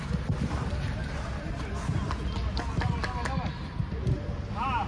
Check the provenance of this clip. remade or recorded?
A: recorded